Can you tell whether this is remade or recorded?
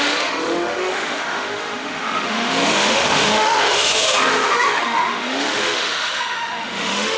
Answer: remade